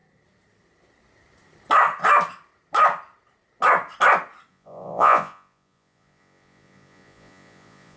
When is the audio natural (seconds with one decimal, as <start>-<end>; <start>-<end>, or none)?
0.0-4.5